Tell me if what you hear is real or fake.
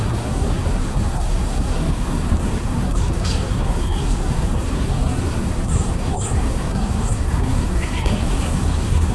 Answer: fake